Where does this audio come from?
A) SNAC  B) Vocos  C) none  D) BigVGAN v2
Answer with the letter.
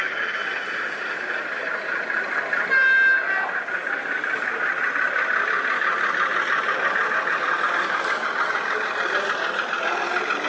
C